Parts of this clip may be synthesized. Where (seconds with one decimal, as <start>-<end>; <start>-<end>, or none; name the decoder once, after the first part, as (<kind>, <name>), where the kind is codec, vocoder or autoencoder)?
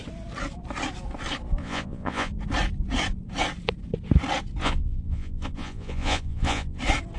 1.6-2.3 (vocoder, Vocos); 4.6-6.8